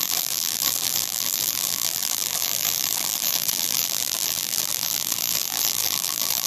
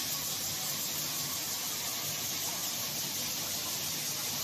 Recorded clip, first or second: second